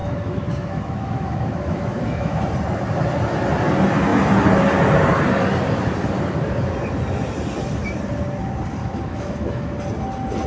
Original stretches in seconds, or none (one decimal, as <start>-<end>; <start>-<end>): 2.4-8.8; 9.8-10.5